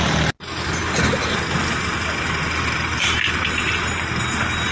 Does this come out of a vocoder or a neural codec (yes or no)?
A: no